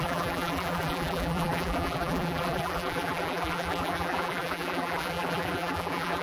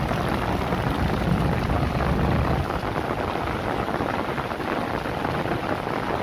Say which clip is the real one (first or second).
second